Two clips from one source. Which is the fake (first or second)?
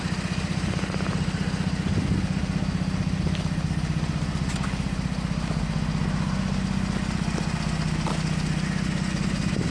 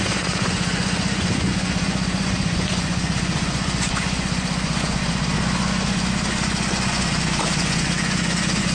second